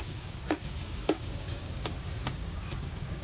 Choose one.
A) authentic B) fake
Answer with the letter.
B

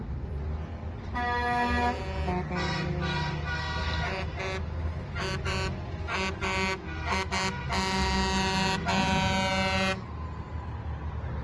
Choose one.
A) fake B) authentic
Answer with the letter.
B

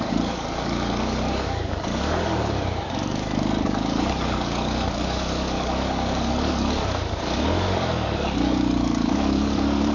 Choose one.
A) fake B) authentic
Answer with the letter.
A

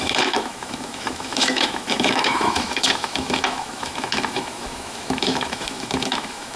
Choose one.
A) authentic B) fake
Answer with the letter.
B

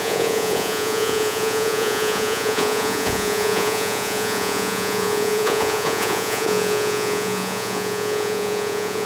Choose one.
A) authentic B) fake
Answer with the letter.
B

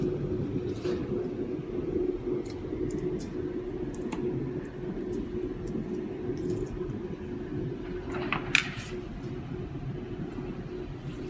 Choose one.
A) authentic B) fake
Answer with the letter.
A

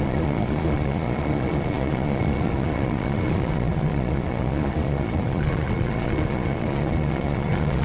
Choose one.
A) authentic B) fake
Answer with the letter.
B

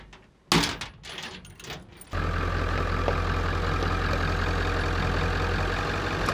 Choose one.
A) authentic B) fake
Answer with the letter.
A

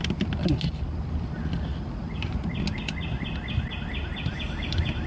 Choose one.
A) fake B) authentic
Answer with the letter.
B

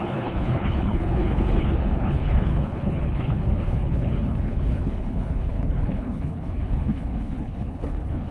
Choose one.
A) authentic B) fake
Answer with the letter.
B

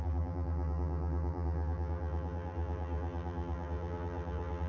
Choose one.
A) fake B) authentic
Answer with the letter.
A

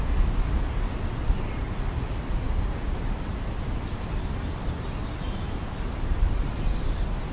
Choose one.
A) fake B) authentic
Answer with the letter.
B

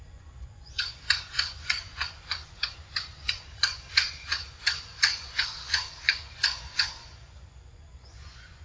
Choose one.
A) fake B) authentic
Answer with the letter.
A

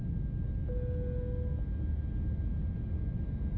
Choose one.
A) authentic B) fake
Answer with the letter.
A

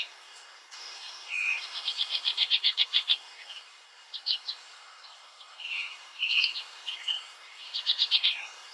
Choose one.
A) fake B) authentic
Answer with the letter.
A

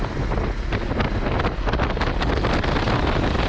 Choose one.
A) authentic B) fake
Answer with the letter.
A